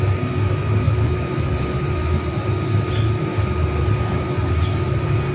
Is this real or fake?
real